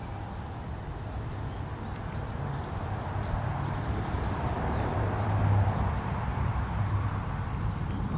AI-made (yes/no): yes